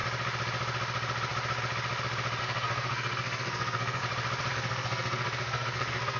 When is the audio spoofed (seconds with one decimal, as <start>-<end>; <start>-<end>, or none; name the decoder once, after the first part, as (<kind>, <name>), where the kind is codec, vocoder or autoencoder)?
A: 2.4-4.0 (codec, SNAC); 4.5-6.2